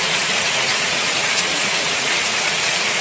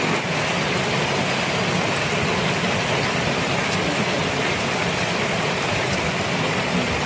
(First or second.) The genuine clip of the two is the second